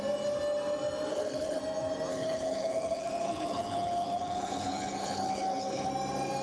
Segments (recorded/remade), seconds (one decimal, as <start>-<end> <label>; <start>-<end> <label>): 0.0-1.1 recorded; 1.1-1.6 remade; 1.6-2.1 recorded; 2.1-5.9 remade; 5.9-6.4 recorded